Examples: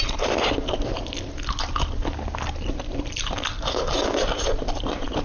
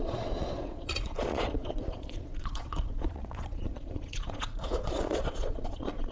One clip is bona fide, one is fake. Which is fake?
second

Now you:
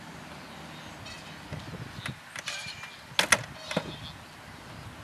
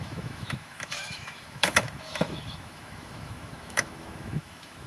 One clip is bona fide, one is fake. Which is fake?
second